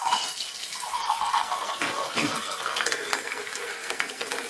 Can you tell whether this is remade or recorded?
remade